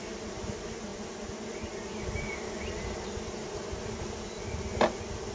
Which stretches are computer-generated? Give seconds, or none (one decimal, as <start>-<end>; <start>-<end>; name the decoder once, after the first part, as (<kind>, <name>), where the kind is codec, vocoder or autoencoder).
none